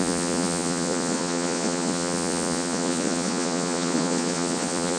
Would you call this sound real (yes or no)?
no